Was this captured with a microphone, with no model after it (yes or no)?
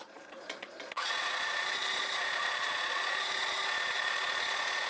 no